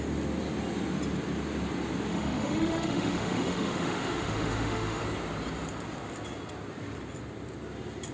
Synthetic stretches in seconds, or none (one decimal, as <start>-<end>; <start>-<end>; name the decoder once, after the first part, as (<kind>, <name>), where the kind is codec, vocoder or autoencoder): 2.1-5.0 (autoencoder, DAC-VAE)